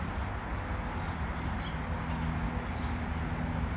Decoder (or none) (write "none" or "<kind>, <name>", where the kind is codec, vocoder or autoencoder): none